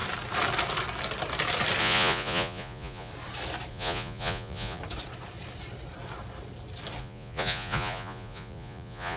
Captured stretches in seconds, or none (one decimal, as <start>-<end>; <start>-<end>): 0.0-1.8; 3.1-3.7; 4.8-7.0